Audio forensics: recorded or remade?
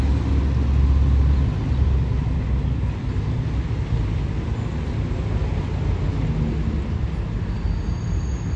recorded